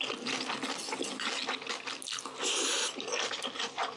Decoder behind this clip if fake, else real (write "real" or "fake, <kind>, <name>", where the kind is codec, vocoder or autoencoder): real